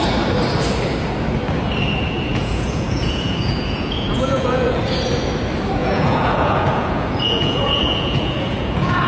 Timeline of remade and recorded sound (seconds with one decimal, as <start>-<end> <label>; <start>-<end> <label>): 0.0-2.3 recorded; 2.3-4.8 remade; 4.8-5.8 recorded; 5.8-9.1 remade